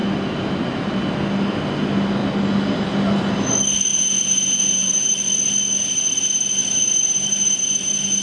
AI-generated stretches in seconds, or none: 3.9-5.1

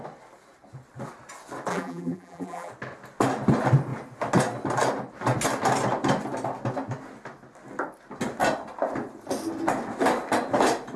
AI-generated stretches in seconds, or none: 1.7-2.7

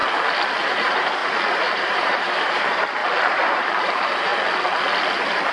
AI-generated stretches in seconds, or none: 0.7-1.2; 1.7-3.0; 3.5-4.3